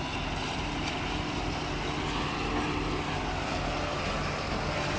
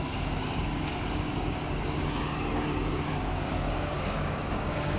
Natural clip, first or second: first